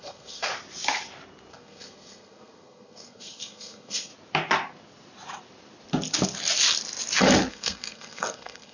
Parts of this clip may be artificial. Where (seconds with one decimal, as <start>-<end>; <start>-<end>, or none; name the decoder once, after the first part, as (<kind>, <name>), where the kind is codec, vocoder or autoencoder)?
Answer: 0.0-0.5 (codec, SNAC); 1.5-4.1; 7.5-8.7